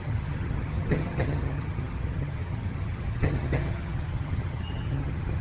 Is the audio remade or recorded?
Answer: remade